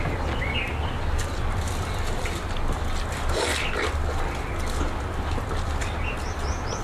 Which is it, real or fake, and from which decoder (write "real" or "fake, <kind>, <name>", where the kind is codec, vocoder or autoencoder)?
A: real